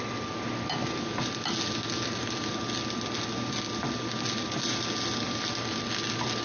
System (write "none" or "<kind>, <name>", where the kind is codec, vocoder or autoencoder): none